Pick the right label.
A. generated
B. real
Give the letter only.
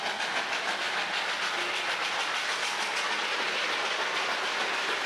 B